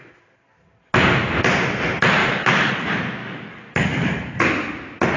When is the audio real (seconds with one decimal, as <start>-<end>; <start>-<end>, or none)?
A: 0.0-2.2; 2.7-3.2; 4.3-5.2